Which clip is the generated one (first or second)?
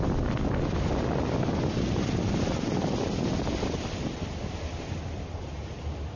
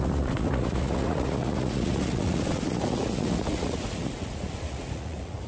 second